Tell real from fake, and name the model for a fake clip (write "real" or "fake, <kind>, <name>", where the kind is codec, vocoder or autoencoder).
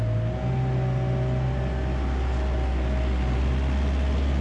real